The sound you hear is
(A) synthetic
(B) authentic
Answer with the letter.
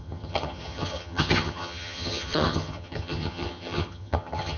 A